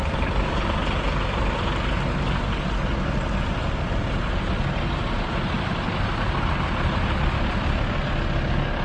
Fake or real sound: real